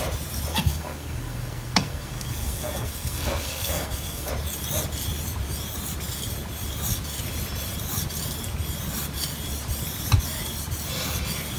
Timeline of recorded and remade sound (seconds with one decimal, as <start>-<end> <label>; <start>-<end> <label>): 0.0-0.5 recorded; 0.5-4.3 remade; 4.3-11.6 recorded

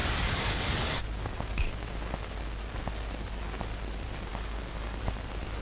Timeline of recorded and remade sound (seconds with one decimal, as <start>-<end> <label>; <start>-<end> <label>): 0.0-1.0 remade; 1.0-4.3 recorded; 4.3-5.0 remade; 5.0-5.6 recorded

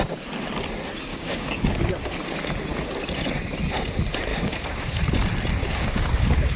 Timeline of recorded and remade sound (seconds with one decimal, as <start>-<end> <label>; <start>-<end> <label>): 0.0-1.1 recorded; 1.1-1.8 remade; 1.8-4.3 recorded; 4.3-5.0 remade; 5.0-5.6 recorded; 5.6-6.6 remade

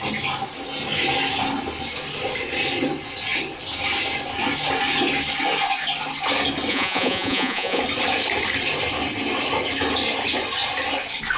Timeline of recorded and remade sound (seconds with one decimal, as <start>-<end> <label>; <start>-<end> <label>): 0.0-6.7 recorded; 6.7-7.8 remade; 7.8-11.4 recorded

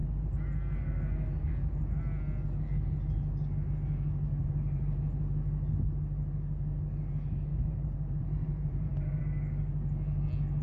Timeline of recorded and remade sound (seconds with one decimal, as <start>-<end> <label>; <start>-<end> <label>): 0.0-4.4 recorded; 4.4-5.0 remade; 5.0-7.5 recorded; 7.5-9.2 remade; 9.2-10.6 recorded